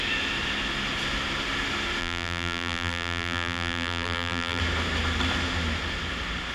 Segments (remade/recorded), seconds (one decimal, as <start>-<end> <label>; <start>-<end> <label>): 0.0-2.0 recorded; 2.0-4.6 remade; 4.6-6.5 recorded